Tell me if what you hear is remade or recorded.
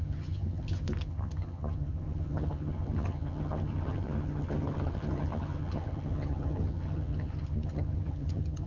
remade